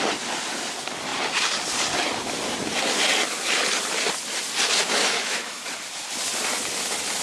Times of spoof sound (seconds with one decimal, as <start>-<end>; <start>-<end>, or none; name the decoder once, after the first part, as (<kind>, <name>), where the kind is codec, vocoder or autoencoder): 4.8-5.6 (autoencoder, DAC-VAE)